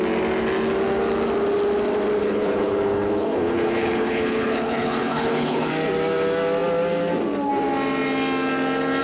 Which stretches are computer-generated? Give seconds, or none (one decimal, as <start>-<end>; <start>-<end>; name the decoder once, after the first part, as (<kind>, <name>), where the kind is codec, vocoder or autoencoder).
2.2-5.7 (codec, HILCodec)